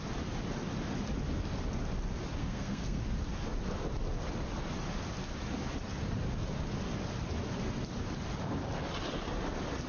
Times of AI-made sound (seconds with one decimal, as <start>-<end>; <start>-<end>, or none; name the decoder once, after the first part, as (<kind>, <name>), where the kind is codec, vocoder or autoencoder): 2.4-3.0 (codec, SNAC)